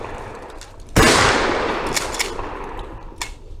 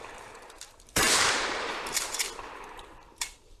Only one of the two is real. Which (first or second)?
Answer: first